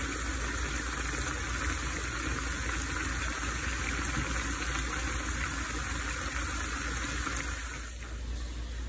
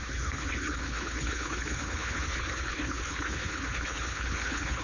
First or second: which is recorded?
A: first